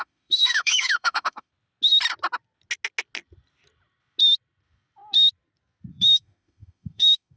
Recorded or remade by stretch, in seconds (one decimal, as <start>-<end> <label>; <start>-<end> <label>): 0.0-1.5 remade; 1.5-5.9 recorded; 5.9-7.4 remade